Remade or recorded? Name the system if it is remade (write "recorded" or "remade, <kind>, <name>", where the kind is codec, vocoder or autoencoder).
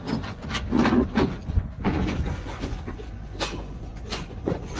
remade, vocoder, Vocos